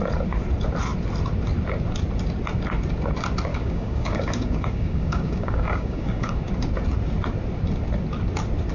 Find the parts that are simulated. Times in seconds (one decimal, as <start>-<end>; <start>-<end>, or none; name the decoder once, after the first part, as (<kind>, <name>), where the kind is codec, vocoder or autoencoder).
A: 3.5-6.5 (codec, DAC)